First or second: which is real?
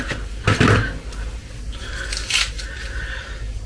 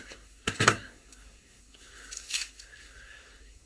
first